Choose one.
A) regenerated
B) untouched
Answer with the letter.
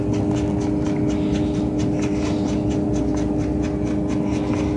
B